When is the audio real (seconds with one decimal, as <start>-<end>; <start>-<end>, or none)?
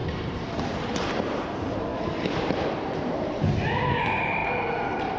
1.9-2.7